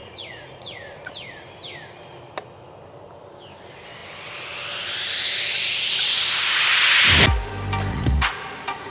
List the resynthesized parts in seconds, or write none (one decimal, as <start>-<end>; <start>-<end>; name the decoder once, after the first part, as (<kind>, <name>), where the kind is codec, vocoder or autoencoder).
0.0-1.4 (vocoder, Vocos); 7.9-8.9